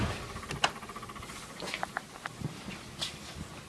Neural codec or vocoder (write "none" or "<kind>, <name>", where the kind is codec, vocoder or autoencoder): none